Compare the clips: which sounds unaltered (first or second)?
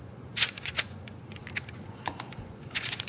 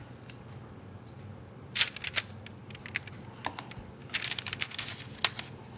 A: second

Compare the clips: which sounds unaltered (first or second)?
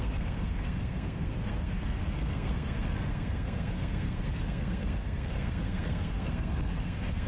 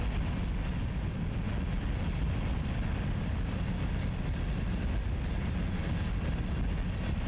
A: second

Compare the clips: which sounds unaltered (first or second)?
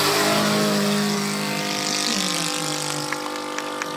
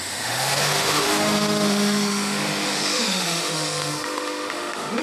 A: first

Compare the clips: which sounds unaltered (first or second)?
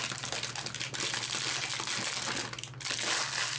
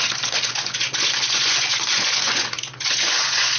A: first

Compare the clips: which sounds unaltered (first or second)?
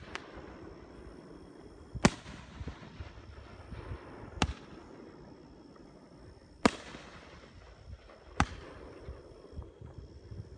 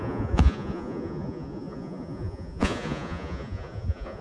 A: first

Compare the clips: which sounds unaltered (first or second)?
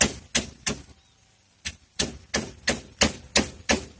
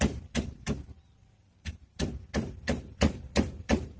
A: first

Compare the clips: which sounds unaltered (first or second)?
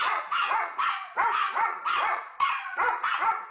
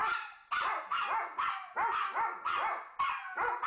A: second